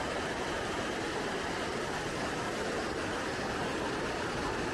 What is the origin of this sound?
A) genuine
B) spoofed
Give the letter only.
A